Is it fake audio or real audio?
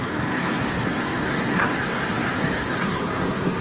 fake